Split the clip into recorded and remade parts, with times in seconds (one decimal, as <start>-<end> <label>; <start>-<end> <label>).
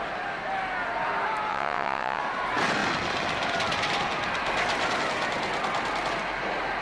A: 0.0-1.5 recorded; 1.5-2.2 remade; 2.2-6.8 recorded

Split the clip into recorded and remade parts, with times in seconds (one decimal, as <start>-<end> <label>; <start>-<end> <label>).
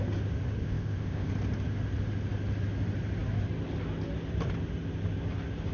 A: 0.0-0.6 recorded; 0.6-1.3 remade; 1.3-5.7 recorded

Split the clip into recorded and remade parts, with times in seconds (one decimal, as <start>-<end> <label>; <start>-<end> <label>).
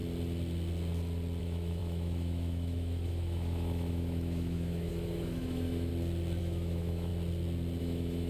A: 0.0-1.4 recorded; 1.4-5.9 remade; 5.9-6.4 recorded; 6.4-7.1 remade; 7.1-7.8 recorded; 7.8-8.3 remade